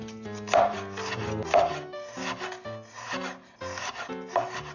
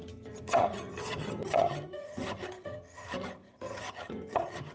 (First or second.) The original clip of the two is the first